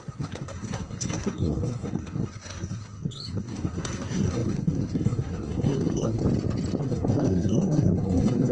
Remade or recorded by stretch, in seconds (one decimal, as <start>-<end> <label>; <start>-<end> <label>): 0.0-6.2 remade; 6.2-6.8 recorded; 6.8-8.5 remade